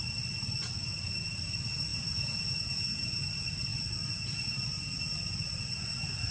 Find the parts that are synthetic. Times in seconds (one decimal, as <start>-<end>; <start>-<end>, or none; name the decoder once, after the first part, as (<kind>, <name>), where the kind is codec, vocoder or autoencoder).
1.9-3.2 (vocoder, Vocos)